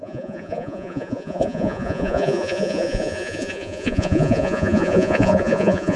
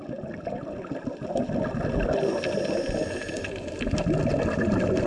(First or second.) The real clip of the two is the second